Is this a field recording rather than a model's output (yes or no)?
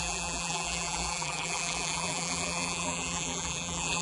no